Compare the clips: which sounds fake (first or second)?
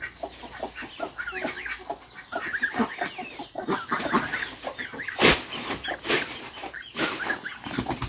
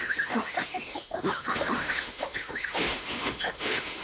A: second